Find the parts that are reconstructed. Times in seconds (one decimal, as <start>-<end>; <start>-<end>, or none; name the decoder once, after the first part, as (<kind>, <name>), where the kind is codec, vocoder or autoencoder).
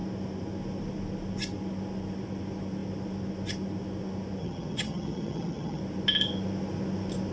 4.4-5.8 (vocoder, HiFi-GAN)